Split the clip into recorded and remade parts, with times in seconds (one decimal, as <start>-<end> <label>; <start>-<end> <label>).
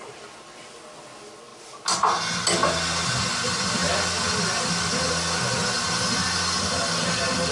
0.0-7.5 recorded